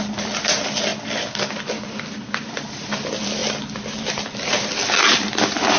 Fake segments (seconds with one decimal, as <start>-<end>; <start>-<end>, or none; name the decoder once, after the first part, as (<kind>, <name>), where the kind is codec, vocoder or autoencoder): none